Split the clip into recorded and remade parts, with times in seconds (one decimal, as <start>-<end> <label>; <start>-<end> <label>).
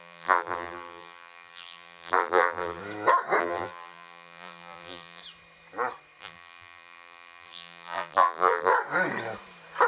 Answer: 0.0-2.8 remade; 2.8-3.4 recorded; 3.4-5.2 remade; 5.2-6.2 recorded; 6.2-8.7 remade; 8.7-9.9 recorded